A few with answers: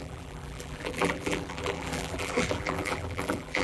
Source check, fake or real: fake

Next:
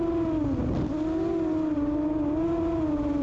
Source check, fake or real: real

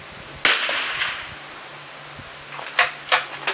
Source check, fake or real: real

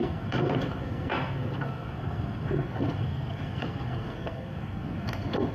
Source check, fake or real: fake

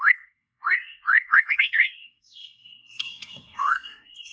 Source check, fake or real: fake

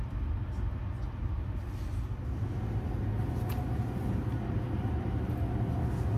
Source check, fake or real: real